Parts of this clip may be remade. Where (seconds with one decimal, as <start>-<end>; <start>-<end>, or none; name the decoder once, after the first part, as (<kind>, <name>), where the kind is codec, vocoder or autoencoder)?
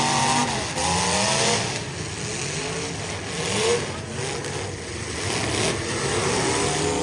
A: none